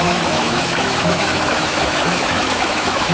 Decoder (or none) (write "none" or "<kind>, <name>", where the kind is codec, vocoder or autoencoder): autoencoder, DAC-VAE